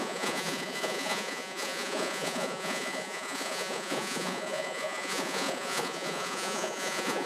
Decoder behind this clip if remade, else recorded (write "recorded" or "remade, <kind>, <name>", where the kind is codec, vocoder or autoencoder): remade, vocoder, Vocos